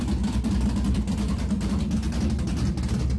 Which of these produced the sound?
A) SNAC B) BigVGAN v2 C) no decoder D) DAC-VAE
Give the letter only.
C